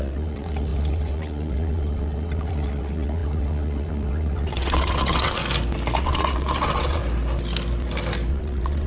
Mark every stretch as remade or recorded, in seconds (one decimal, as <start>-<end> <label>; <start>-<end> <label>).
0.0-5.4 remade; 5.4-6.0 recorded; 6.0-7.0 remade; 7.0-8.3 recorded; 8.3-8.9 remade